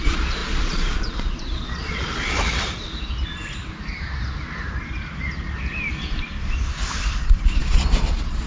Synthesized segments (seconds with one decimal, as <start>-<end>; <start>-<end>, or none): 0.0-2.5; 7.6-8.5